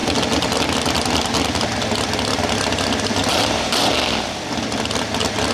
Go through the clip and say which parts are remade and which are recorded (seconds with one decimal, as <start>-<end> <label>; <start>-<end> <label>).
0.0-3.2 recorded; 3.2-3.9 remade; 3.9-5.5 recorded